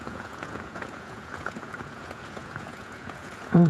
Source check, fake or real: fake